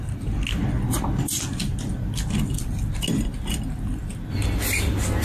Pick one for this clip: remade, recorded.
recorded